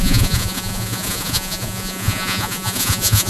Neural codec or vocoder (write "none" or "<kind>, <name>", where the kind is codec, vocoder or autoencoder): vocoder, Vocos